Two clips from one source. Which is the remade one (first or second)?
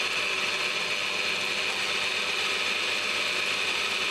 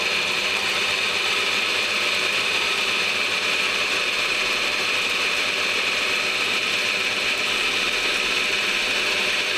second